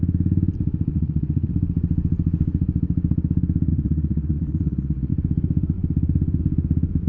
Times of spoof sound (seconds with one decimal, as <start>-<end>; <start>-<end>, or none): 0.9-1.5; 3.7-5.1